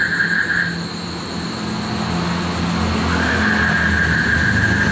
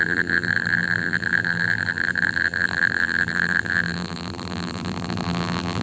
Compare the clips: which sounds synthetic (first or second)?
second